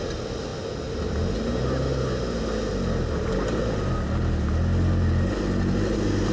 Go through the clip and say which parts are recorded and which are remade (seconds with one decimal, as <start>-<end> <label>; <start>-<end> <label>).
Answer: 0.0-6.3 recorded